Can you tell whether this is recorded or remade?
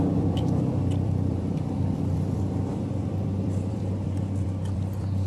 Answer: remade